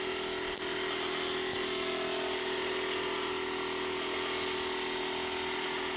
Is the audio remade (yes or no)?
no